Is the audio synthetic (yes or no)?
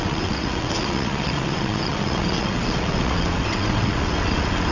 yes